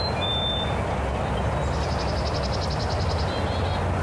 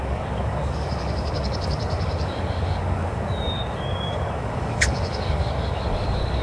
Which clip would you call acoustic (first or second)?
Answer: first